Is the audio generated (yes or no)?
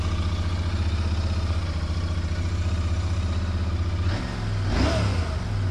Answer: no